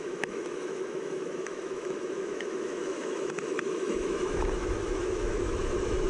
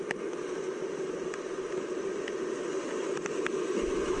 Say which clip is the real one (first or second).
second